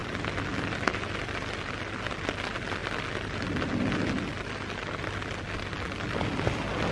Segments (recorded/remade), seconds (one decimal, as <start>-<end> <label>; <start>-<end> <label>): 0.0-6.9 recorded